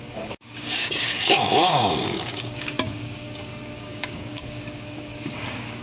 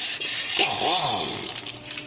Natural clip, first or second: second